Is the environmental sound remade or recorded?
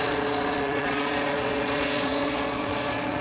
remade